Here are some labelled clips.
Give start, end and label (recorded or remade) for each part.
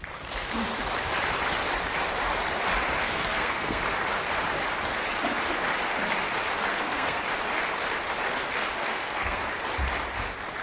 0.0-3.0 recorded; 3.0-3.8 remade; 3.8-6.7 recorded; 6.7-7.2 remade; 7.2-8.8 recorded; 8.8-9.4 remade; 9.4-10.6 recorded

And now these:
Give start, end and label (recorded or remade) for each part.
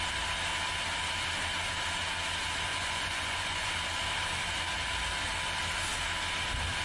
0.0-2.7 recorded; 2.7-3.7 remade; 3.7-6.8 recorded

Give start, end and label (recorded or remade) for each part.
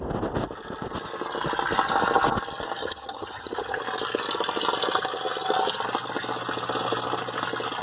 0.0-2.8 recorded; 2.8-3.8 remade; 3.8-7.8 recorded